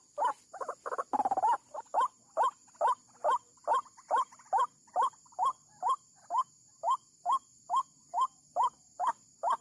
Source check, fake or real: real